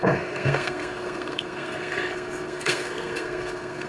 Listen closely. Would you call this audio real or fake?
fake